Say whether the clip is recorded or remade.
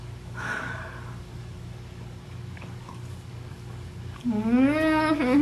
remade